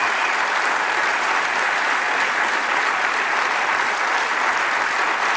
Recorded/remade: recorded